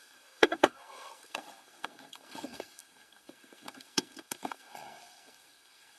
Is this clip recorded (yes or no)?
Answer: no